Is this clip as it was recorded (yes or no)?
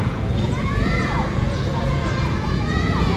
no